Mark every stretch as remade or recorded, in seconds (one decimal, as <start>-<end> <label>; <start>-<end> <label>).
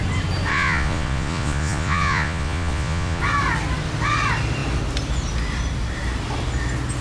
0.0-0.5 recorded; 0.5-3.2 remade; 3.2-7.0 recorded